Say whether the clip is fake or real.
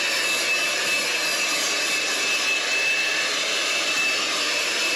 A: real